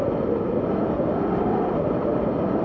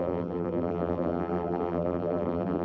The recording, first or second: first